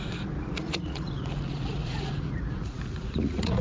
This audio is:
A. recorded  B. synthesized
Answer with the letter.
B